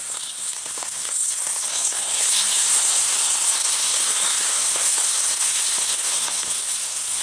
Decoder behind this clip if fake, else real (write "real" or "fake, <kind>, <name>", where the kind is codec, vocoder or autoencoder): fake, codec, SNAC